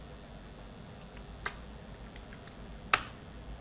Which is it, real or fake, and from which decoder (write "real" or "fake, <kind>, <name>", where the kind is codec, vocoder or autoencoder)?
real